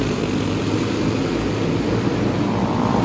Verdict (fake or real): real